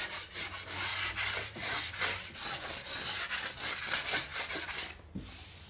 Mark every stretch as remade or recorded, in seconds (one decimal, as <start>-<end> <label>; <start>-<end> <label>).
0.0-5.7 recorded